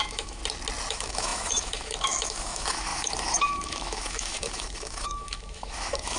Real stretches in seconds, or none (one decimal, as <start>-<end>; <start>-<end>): 0.4-0.9

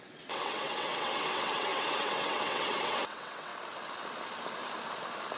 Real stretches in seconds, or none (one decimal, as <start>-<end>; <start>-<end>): 3.5-5.4